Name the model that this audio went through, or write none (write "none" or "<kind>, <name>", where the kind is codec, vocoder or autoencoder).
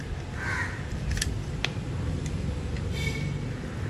vocoder, BigVGAN v2